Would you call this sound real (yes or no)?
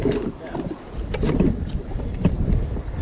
no